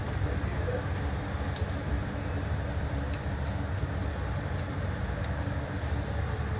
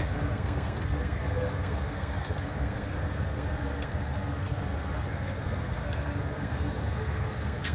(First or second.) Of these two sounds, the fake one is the second